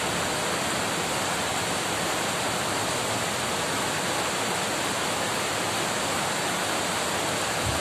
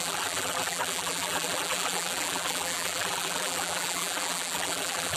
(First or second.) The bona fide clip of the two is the first